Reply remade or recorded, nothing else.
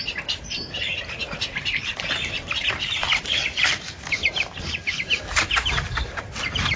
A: remade